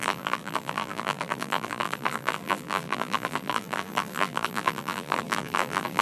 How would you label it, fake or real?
fake